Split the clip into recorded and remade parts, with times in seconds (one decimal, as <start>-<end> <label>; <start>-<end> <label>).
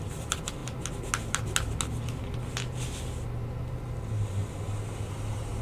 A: 0.0-5.6 recorded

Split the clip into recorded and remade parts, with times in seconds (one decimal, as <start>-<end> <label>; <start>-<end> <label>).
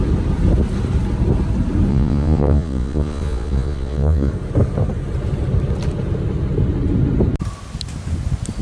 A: 0.0-1.9 recorded; 1.9-4.3 remade; 4.3-8.6 recorded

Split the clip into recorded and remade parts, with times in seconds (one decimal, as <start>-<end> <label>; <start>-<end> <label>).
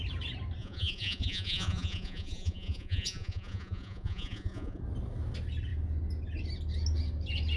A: 0.0-0.6 recorded; 0.6-4.8 remade; 4.8-7.6 recorded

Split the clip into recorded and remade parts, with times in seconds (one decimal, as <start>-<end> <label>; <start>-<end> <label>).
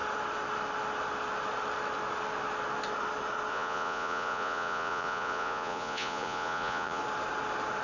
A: 0.0-3.5 recorded; 3.5-7.0 remade; 7.0-7.8 recorded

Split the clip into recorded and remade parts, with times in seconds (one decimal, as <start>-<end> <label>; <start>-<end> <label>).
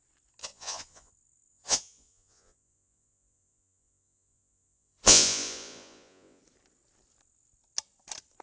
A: 0.0-0.4 recorded; 0.4-1.1 remade; 1.1-1.5 recorded; 1.5-6.4 remade; 6.4-8.4 recorded